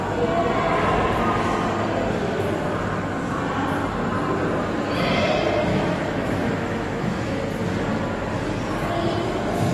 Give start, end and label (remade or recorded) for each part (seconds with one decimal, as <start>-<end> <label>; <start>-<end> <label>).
0.0-5.7 recorded; 5.7-7.4 remade; 7.4-9.7 recorded